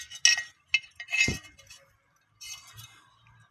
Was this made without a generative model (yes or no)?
yes